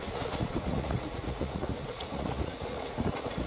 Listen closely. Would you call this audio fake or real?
fake